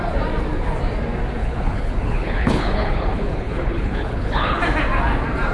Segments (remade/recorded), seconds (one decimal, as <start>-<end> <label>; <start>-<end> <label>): 0.0-1.4 recorded; 1.4-4.6 remade; 4.6-5.5 recorded